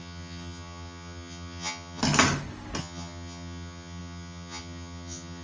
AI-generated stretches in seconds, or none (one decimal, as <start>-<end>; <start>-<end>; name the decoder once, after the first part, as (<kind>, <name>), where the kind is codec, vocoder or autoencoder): 0.0-2.0 (vocoder, HiFi-GAN); 2.8-5.4